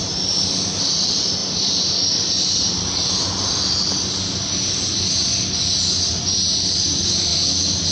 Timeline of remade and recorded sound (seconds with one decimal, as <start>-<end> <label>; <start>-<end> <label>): 0.0-5.2 remade; 5.2-6.1 recorded; 6.1-7.3 remade; 7.3-7.9 recorded